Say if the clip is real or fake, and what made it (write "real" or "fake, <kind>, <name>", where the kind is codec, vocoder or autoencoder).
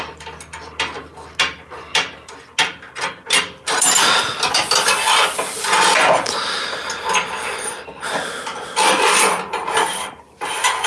real